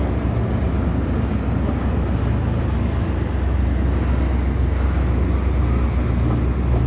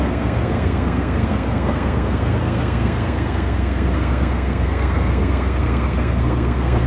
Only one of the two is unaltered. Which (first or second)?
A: first